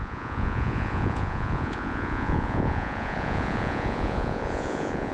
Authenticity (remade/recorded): remade